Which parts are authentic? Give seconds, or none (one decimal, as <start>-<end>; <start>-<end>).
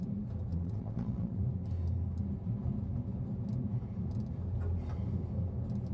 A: 0.0-0.5; 1.4-5.9